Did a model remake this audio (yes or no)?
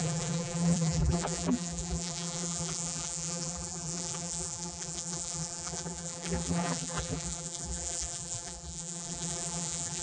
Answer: yes